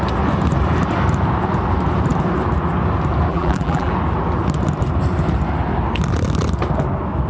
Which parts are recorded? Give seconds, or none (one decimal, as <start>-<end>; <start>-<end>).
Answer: 0.0-3.3; 3.9-7.3